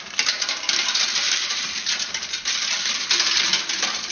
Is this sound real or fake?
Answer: fake